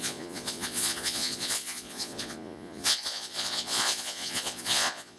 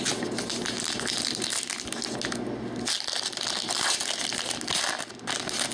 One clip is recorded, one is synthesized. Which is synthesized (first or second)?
first